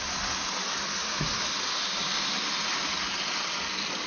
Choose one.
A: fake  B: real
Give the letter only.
B